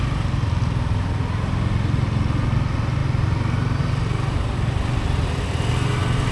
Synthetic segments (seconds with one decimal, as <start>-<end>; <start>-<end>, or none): none